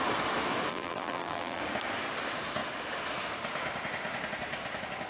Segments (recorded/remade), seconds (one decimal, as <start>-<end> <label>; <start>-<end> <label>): 0.0-0.7 recorded; 0.7-1.6 remade; 1.6-5.1 recorded